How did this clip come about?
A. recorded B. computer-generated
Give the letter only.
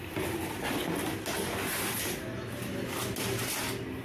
A